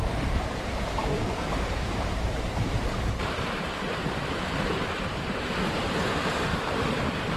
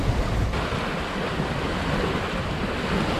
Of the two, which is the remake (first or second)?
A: first